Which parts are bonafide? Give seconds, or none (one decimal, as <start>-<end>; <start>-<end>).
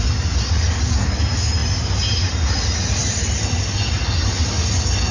0.0-5.1